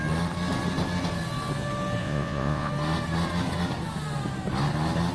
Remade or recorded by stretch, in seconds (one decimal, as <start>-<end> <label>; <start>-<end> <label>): 0.0-2.0 recorded; 2.0-2.7 remade; 2.7-5.1 recorded